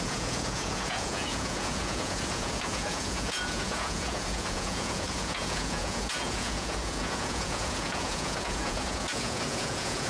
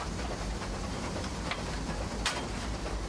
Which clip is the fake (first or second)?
first